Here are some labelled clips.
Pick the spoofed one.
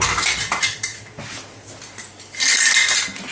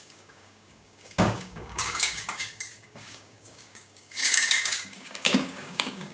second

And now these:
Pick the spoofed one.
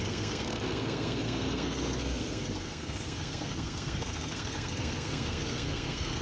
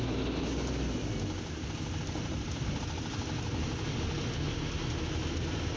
first